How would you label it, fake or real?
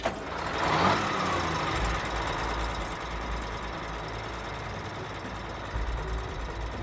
real